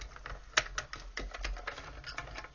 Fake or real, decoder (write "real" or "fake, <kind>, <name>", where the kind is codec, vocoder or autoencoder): real